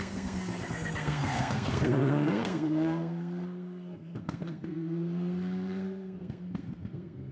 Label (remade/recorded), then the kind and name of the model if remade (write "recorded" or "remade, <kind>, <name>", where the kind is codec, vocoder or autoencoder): remade, codec, SNAC